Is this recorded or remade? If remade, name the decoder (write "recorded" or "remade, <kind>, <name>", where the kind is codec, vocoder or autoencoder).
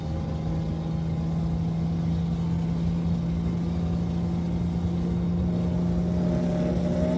recorded